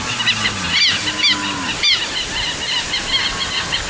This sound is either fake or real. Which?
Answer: real